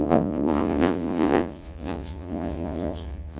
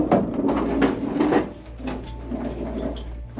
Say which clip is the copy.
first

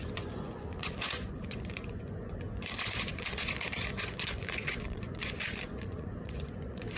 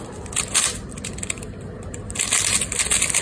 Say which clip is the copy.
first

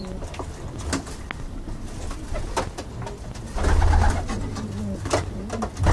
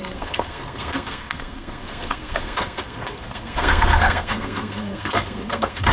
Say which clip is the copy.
second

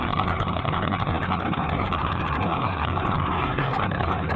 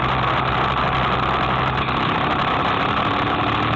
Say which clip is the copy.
first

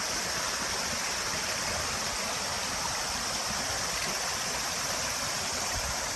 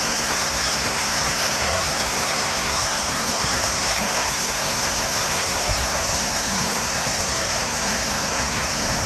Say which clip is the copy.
second